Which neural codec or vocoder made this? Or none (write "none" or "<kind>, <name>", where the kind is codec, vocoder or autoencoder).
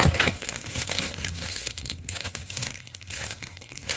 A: codec, SNAC